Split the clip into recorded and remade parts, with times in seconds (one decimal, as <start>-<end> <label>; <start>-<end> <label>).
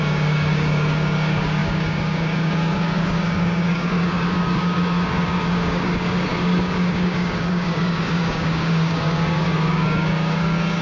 0.0-10.8 remade